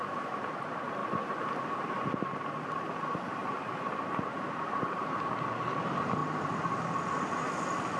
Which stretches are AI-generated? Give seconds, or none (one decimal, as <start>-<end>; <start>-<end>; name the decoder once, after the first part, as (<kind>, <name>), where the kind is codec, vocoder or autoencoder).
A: none